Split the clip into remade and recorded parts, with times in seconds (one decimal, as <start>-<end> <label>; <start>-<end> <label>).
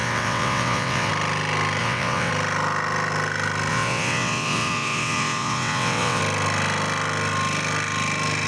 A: 0.0-1.1 remade; 1.1-1.8 recorded; 1.8-2.3 remade; 2.3-3.7 recorded; 3.7-6.2 remade; 6.2-8.5 recorded